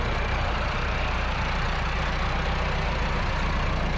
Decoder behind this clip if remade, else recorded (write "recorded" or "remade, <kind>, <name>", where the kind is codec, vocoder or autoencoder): recorded